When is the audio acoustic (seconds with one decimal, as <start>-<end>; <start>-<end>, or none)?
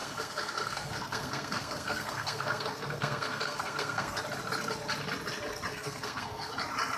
4.2-5.7; 6.5-7.0